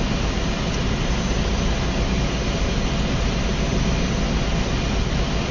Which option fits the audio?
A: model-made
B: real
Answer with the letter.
B